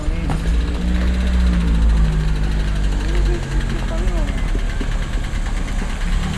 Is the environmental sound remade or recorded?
recorded